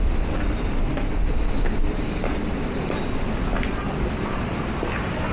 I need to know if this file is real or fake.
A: real